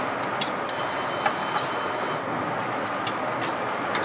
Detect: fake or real real